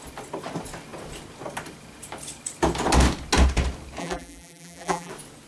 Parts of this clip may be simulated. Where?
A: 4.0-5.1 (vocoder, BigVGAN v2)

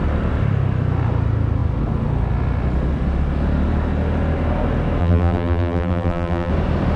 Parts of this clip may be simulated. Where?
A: 5.0-6.5 (vocoder, BigVGAN v2)

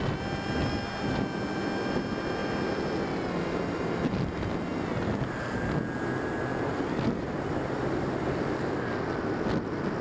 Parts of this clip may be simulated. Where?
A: none